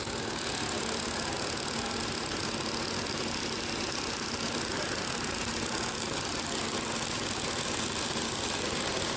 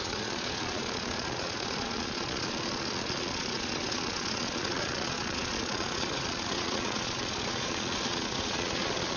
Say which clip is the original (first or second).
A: first